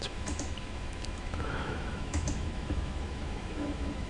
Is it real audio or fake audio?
fake